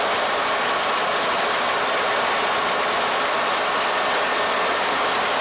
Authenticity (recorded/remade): recorded